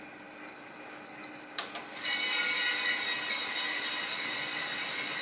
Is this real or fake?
real